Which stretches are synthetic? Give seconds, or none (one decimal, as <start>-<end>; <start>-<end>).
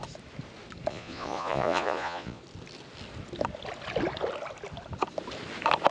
0.9-2.4